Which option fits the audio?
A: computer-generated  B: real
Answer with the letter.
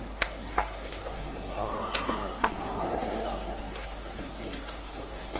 A